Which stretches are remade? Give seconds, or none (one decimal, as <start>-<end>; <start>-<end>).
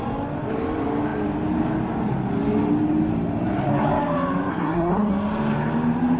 4.5-5.1